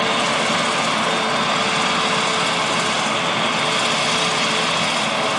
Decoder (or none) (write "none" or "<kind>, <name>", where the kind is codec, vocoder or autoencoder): none